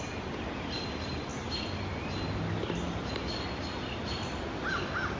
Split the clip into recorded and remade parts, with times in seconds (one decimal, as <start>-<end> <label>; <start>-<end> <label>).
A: 0.0-5.2 recorded